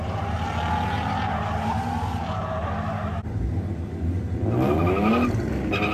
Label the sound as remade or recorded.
recorded